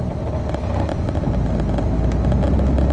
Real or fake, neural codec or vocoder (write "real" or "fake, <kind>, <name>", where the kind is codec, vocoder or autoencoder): real